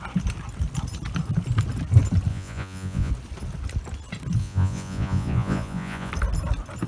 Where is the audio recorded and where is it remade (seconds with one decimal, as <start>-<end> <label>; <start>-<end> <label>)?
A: 0.0-2.3 recorded; 2.3-3.1 remade; 3.1-4.4 recorded; 4.4-6.1 remade; 6.1-6.9 recorded